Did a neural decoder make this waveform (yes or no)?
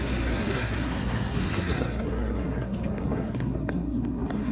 yes